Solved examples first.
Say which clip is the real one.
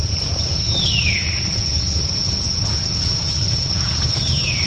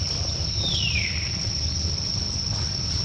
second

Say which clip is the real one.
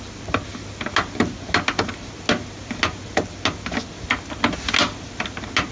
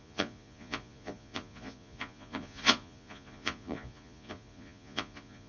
first